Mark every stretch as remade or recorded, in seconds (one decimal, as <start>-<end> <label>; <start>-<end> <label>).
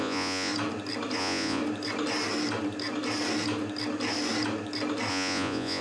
0.0-0.5 remade; 0.5-1.2 recorded; 1.2-1.6 remade; 1.6-5.1 recorded; 5.1-5.8 remade